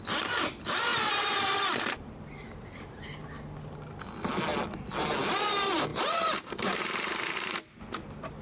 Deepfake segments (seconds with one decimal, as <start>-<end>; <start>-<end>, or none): 0.9-3.4; 5.9-7.8